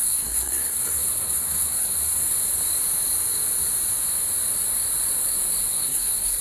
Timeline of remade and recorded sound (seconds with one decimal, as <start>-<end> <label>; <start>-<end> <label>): 0.0-2.2 remade; 2.2-5.7 recorded; 5.7-6.4 remade